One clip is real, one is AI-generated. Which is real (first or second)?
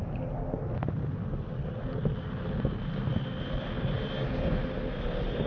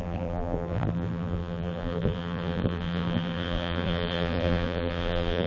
first